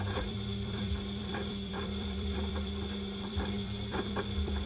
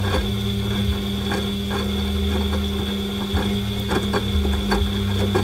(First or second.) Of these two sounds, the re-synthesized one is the first